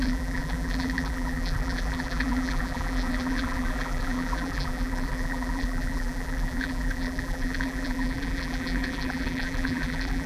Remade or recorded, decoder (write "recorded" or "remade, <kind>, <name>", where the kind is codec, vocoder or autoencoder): remade, vocoder, BigVGAN v2